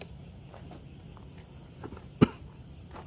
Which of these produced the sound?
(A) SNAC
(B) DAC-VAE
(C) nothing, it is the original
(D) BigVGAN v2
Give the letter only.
C